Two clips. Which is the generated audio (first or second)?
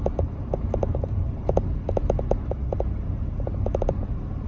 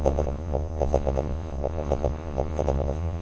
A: second